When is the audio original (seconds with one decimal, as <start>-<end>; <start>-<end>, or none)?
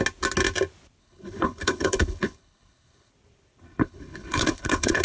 0.0-1.0; 3.1-3.8